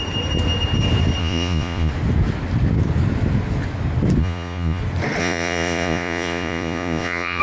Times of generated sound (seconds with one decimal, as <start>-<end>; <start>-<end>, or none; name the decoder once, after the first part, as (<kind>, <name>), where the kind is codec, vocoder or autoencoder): 1.2-1.9 (vocoder, Vocos); 4.2-4.8; 5.2-7.4

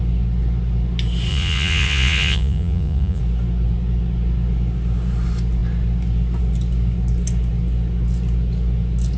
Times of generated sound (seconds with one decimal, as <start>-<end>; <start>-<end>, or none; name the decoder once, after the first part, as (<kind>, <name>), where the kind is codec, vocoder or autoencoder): 1.3-3.2 (vocoder, Vocos)